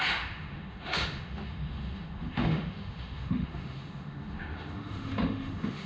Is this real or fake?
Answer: fake